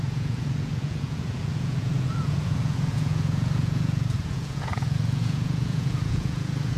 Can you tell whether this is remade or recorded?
remade